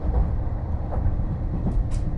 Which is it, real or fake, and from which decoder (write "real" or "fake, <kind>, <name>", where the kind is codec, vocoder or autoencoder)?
real